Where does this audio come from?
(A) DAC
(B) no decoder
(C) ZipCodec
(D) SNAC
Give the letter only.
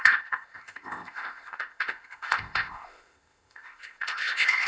C